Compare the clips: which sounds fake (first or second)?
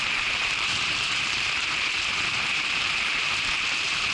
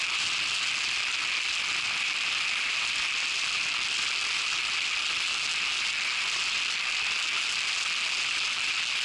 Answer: first